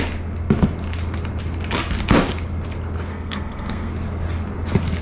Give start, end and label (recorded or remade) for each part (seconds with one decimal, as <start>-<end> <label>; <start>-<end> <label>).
0.0-3.1 recorded; 3.1-3.9 remade; 3.9-5.0 recorded